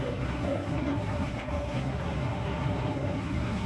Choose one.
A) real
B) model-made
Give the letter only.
B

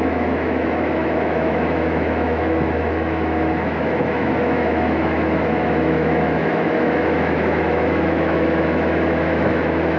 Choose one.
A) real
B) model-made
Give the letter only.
B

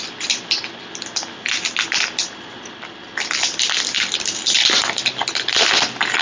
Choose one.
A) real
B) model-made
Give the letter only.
A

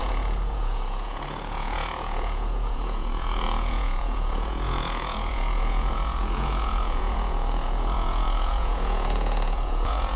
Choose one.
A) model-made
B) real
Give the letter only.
A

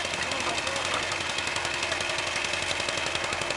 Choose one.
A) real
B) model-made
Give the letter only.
A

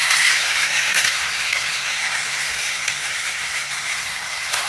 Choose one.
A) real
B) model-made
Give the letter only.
B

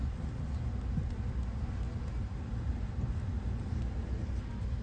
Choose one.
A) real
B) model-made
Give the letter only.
A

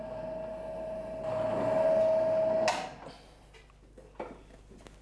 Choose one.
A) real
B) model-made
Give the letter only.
A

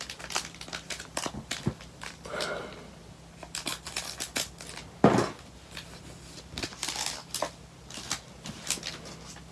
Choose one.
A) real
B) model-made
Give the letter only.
A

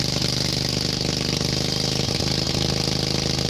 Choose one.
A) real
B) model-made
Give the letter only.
A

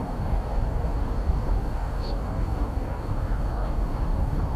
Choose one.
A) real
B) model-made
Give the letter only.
B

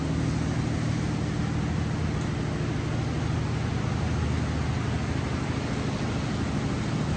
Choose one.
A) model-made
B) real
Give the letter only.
B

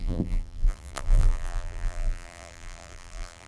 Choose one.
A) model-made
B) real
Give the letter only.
A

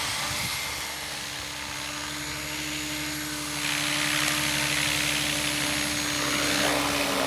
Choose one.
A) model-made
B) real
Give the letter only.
B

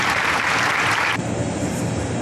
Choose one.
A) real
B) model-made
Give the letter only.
B